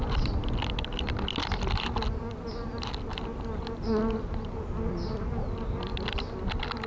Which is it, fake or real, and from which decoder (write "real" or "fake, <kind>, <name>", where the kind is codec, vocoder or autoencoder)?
real